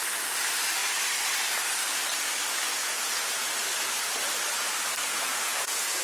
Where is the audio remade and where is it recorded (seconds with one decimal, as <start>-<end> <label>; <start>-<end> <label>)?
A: 0.0-2.8 recorded; 2.8-3.5 remade; 3.5-5.1 recorded; 5.1-6.0 remade